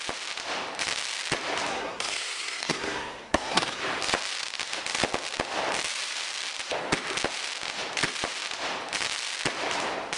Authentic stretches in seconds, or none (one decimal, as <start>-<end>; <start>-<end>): 0.0-1.7; 3.8-10.2